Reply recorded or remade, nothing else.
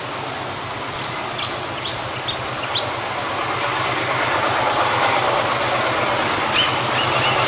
recorded